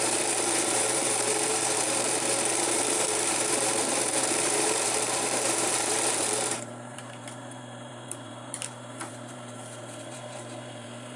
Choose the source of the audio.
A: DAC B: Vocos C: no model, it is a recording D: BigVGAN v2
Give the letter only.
D